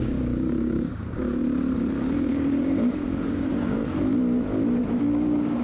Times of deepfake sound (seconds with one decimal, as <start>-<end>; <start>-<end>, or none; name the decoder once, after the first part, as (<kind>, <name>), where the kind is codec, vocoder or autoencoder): 0.0-1.4 (codec, DAC); 2.3-3.8; 5.0-5.6